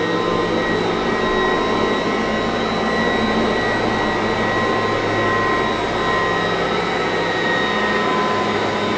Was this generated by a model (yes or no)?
no